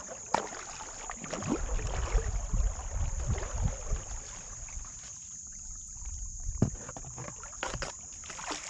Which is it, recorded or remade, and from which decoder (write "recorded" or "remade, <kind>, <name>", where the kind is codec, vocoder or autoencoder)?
recorded